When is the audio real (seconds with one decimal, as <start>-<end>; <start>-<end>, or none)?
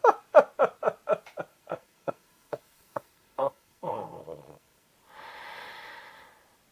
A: 0.0-1.5; 4.9-6.7